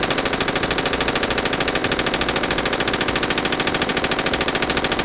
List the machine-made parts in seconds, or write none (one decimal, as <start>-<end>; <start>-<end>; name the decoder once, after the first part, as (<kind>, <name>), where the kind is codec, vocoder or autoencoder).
none